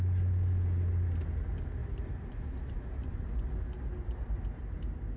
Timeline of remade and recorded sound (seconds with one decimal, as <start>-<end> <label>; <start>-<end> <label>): 0.0-1.8 recorded; 1.8-3.1 remade; 3.1-5.2 recorded